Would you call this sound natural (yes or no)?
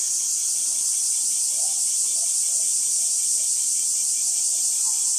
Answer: yes